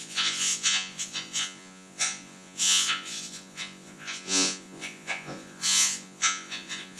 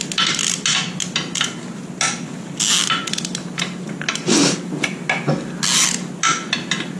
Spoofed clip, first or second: first